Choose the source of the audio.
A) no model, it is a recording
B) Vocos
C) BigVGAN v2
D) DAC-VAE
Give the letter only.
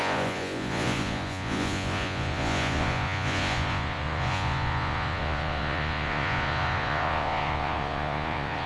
B